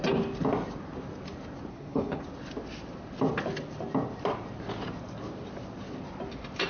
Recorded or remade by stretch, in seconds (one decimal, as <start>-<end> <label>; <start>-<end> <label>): 0.0-1.7 recorded; 1.7-2.2 remade; 2.2-6.7 recorded